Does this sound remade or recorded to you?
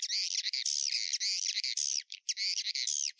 recorded